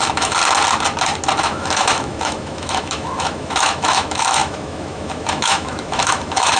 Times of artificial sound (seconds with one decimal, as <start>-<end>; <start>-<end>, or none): 0.0-0.4; 1.4-6.6